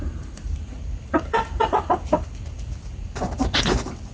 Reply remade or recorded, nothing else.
remade